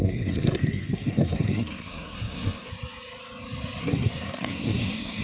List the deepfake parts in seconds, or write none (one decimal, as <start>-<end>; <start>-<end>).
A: 0.0-2.7; 3.8-5.2